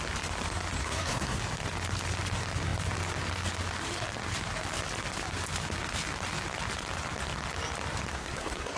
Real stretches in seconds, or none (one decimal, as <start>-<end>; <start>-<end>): 0.0-0.8; 1.4-8.1